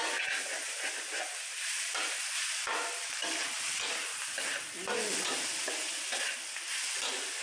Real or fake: real